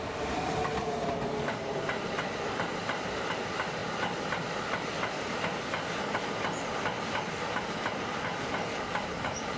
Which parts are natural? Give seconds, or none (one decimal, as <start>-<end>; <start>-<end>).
3.8-8.0